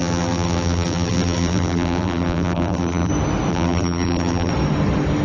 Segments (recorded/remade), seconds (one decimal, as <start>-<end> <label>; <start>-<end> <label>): 0.0-3.1 remade; 3.1-3.5 recorded; 3.5-4.5 remade; 4.5-5.2 recorded

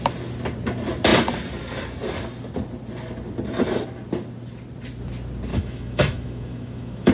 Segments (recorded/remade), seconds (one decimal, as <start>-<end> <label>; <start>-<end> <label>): 0.0-5.5 recorded; 5.5-7.1 remade

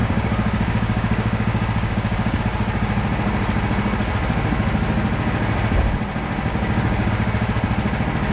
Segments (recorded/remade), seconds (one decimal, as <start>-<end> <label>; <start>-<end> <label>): 0.0-2.4 remade; 2.4-6.5 recorded; 6.5-7.1 remade; 7.1-8.3 recorded

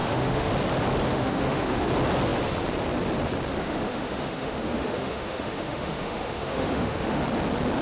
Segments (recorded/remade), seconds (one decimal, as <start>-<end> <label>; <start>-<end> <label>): 0.0-0.5 remade; 0.5-1.1 recorded; 1.1-1.9 remade; 1.9-3.6 recorded; 3.6-7.2 remade; 7.2-7.8 recorded

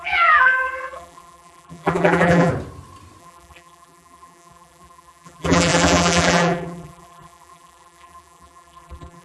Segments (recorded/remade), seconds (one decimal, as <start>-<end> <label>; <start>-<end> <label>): 0.0-2.5 remade; 2.5-3.2 recorded; 3.2-9.2 remade

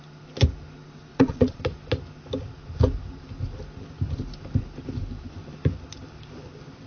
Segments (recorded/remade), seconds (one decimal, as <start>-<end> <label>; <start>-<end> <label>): 0.0-1.1 recorded; 1.1-1.6 remade; 1.6-6.9 recorded

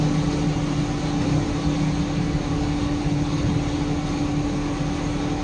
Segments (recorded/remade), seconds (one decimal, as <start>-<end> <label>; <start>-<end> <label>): 0.0-3.0 recorded; 3.0-3.5 remade; 3.5-5.4 recorded